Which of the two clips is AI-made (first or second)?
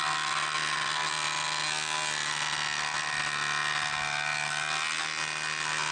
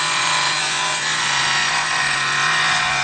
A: second